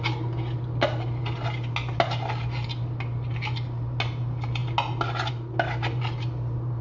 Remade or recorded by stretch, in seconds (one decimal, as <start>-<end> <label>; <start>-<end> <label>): 0.0-6.8 recorded